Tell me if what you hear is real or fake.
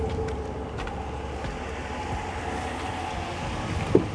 real